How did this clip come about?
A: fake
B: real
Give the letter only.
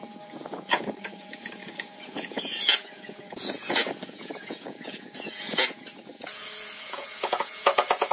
A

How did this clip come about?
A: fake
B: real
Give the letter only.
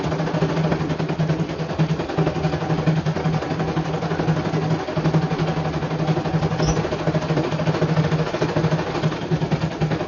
B